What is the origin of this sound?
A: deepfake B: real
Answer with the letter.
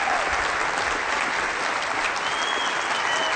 B